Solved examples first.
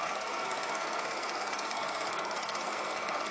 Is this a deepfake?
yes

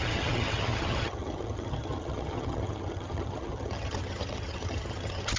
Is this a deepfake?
yes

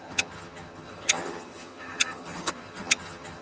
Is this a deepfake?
yes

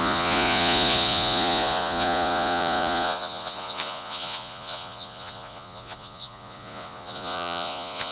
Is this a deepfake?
yes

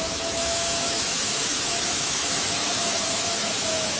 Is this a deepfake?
yes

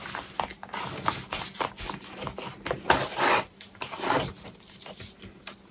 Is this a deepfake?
no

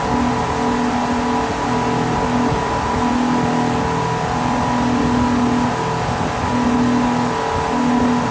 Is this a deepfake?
no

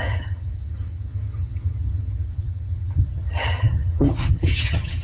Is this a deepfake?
yes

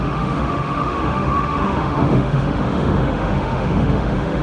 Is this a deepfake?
yes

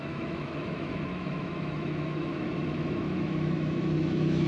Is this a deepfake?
yes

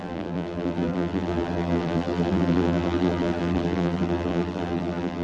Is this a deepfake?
yes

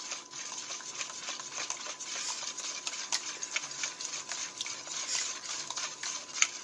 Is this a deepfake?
no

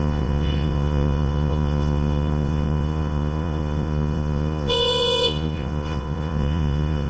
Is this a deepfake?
yes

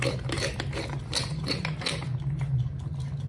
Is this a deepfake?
no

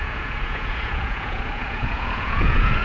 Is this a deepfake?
yes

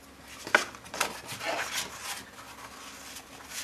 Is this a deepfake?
no